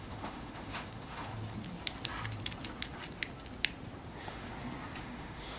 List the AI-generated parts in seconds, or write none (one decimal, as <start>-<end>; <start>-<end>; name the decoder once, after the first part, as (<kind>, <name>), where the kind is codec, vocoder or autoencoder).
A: 0.0-1.3 (autoencoder, DAC-VAE); 4.1-4.5; 5.0-5.6